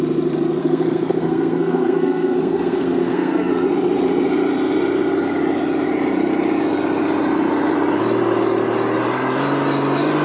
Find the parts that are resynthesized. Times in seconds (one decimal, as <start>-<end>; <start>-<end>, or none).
0.6-3.5